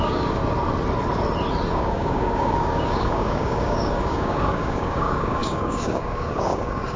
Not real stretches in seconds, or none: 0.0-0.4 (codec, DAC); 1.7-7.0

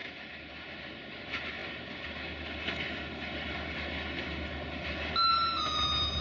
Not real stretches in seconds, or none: none

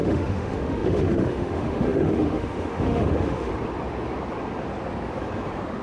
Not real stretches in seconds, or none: 0.0-3.5 (autoencoder, DAC-VAE)

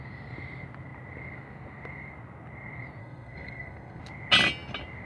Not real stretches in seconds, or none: 3.0-4.0 (codec, SNAC)

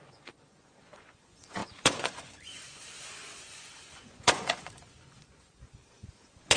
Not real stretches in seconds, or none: 0.0-6.6 (vocoder, Vocos)

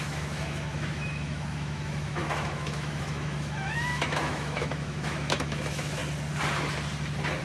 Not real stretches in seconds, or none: 0.0-6.0 (autoencoder, DAC-VAE)

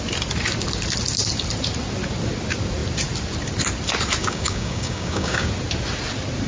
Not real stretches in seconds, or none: 4.2-5.5 (codec, DAC)

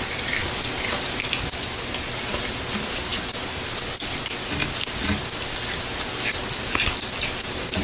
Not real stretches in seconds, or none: none